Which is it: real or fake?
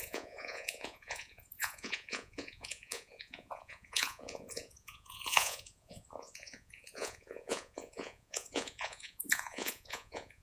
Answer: fake